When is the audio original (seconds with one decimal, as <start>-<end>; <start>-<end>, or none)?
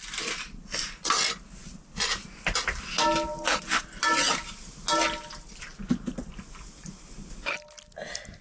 0.0-8.4